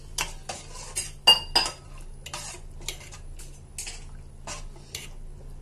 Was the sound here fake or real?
real